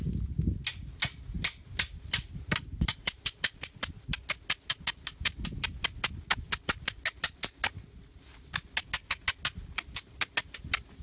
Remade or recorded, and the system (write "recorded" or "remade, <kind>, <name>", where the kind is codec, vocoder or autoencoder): recorded